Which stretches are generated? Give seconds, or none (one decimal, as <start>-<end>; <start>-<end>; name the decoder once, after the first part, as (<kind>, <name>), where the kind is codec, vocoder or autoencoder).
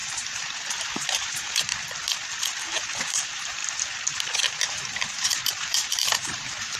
0.0-1.7 (vocoder, BigVGAN v2); 3.0-3.6; 4.5-6.8